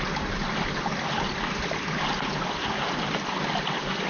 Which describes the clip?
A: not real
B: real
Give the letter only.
B